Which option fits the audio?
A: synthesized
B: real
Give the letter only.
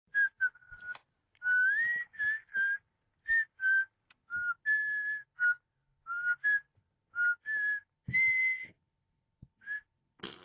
B